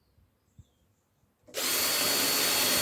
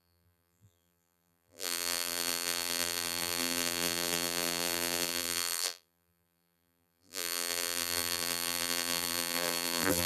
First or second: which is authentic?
first